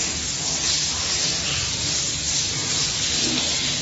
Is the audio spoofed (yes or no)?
no